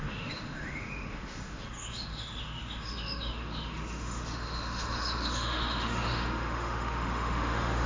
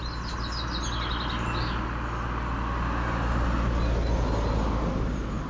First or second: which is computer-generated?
first